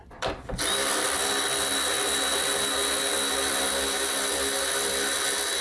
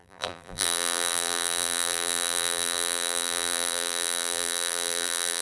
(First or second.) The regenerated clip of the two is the second